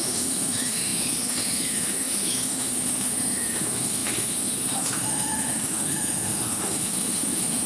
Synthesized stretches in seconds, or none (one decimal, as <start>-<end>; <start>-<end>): 0.0-7.7